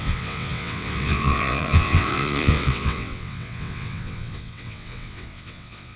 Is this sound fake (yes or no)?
yes